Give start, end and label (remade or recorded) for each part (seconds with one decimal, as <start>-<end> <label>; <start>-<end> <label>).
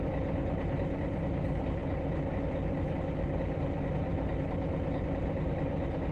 0.0-6.1 recorded